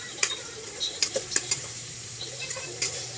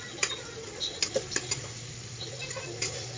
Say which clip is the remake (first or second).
first